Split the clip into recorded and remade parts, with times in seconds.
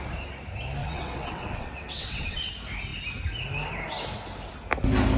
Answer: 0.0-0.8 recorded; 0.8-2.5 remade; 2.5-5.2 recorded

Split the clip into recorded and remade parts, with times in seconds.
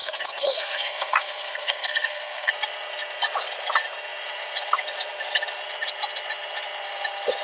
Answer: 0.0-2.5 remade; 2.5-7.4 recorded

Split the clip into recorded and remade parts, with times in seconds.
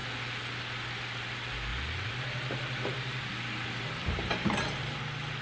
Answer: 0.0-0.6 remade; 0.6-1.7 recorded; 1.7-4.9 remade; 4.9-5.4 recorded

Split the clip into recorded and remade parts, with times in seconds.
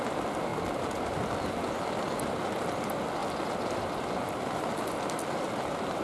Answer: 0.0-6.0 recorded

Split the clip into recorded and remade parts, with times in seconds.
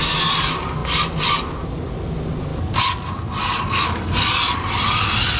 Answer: 0.0-5.4 recorded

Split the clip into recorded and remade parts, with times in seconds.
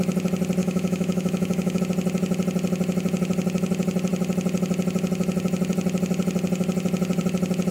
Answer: 0.0-0.6 recorded; 0.6-1.8 remade; 1.8-7.7 recorded